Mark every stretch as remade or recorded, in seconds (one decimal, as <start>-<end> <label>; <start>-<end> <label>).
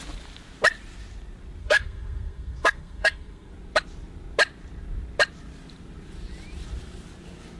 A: 0.0-1.6 recorded; 1.6-3.5 remade; 3.5-7.6 recorded